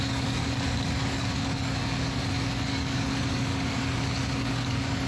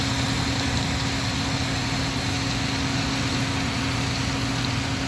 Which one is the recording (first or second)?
second